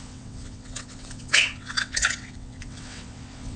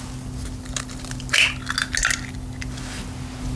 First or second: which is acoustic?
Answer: second